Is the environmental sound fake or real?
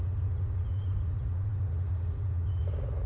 fake